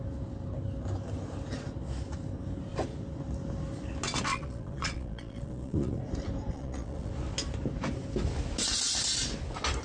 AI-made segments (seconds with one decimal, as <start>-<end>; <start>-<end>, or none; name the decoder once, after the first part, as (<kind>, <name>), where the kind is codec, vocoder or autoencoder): 4.3-6.0 (vocoder, Vocos); 6.5-7.1